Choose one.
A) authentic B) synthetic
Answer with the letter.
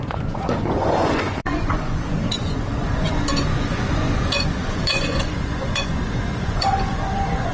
B